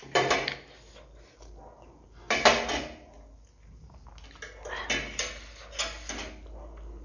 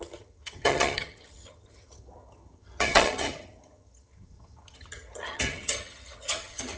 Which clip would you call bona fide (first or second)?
first